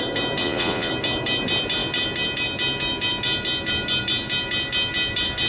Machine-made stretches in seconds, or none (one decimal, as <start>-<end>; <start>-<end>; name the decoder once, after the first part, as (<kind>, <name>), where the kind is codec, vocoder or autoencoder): 0.4-0.9 (vocoder, Vocos)